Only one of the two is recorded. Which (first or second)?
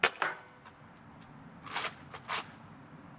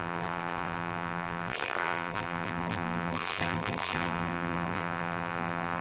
first